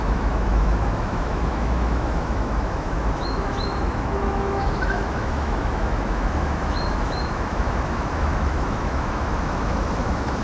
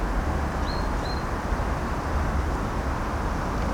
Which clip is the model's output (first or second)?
first